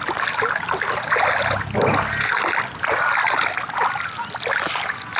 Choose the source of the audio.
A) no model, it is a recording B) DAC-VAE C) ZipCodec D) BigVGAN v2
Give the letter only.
A